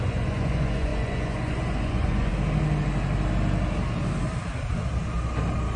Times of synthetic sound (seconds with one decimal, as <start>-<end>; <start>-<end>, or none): 0.0-2.3